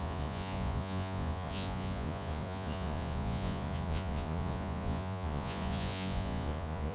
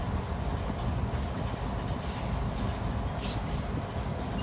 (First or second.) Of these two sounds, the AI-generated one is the first